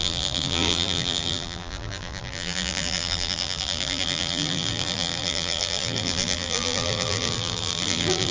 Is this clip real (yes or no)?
no